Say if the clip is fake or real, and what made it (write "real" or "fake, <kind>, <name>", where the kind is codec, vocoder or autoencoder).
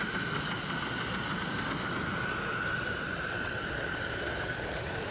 real